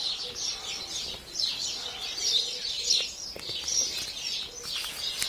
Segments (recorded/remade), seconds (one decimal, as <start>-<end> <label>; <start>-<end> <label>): 0.0-5.3 remade